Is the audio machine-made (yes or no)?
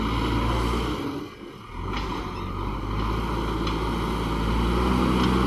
no